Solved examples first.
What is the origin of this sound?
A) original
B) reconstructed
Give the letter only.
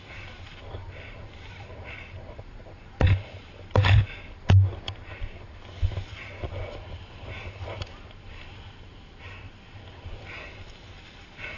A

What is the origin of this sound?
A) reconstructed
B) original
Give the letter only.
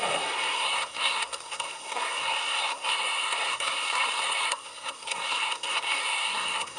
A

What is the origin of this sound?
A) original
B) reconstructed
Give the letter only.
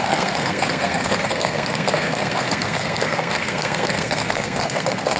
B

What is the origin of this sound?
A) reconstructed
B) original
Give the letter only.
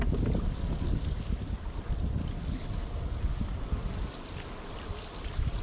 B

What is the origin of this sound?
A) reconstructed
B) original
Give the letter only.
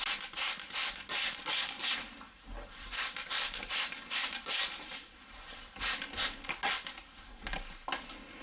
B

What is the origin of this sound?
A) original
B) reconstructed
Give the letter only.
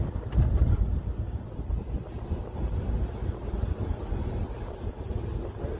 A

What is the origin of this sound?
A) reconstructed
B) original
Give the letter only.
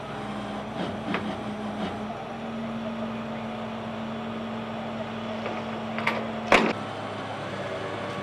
B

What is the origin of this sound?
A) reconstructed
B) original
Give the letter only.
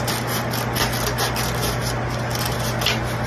B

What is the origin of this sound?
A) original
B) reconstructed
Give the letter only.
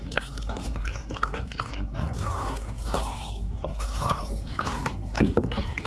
B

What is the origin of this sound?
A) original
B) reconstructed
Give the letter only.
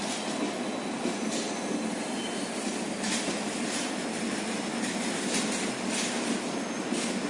A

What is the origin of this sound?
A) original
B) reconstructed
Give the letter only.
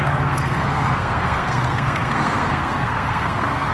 B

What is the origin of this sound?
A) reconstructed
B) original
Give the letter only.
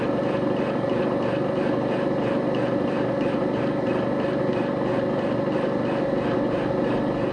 B